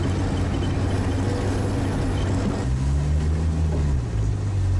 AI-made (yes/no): no